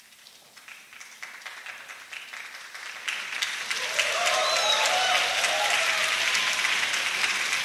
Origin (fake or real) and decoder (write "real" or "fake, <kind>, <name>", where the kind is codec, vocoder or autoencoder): real